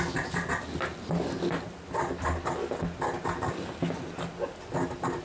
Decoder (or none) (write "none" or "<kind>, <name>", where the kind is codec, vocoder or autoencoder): none